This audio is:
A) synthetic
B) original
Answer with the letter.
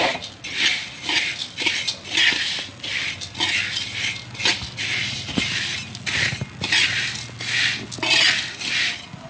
B